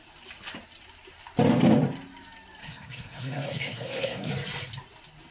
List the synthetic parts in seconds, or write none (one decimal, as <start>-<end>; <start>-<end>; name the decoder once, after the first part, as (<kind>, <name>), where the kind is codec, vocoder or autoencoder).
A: 2.6-4.3 (codec, SNAC)